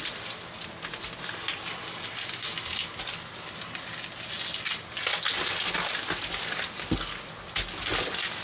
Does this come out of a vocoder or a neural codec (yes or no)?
no